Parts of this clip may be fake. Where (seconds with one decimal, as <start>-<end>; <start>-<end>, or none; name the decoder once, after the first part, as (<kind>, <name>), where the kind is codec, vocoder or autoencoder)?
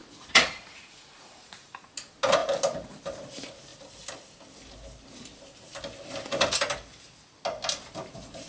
0.0-1.9 (vocoder, Vocos)